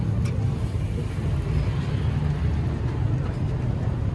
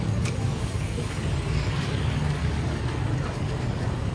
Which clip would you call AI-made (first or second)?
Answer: second